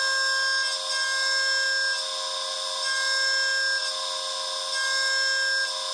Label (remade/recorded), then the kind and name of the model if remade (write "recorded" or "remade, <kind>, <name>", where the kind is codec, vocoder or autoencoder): recorded